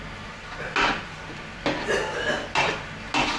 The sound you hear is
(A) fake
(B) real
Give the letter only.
B